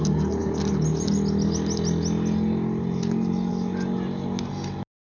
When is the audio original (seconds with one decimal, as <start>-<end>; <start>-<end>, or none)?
0.0-5.1